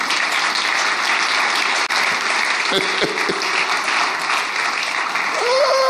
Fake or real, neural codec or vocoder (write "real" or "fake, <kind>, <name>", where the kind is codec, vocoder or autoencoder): real